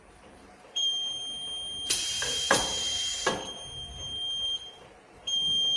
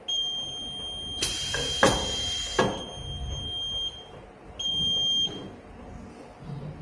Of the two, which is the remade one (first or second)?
first